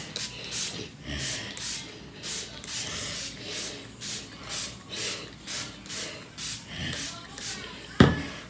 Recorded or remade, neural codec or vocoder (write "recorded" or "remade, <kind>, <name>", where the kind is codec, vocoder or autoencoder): recorded